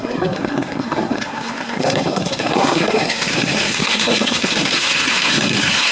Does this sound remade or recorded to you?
remade